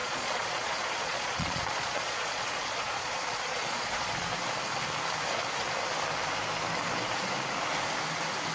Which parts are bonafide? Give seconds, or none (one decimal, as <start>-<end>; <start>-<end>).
3.1-3.5; 4.3-8.5